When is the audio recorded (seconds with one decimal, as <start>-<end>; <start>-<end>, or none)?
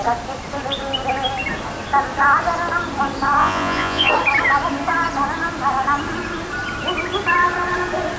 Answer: 0.0-3.4; 4.1-8.2